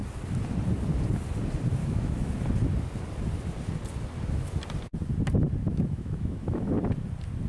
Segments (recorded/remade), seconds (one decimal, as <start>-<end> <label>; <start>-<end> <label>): 0.0-1.8 recorded; 1.8-2.3 remade; 2.3-5.6 recorded; 5.6-6.7 remade; 6.7-7.5 recorded